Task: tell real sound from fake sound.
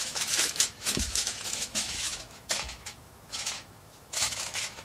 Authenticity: fake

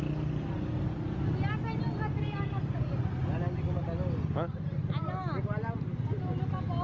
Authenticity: real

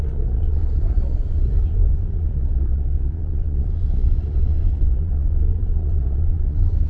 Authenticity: fake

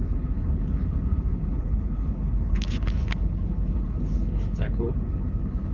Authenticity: fake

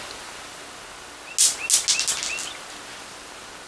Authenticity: real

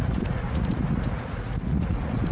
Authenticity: fake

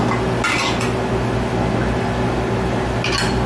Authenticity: real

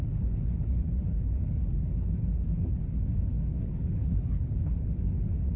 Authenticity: fake